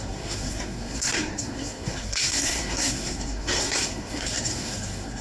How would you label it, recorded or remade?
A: remade